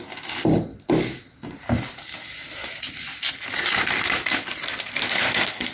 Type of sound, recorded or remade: recorded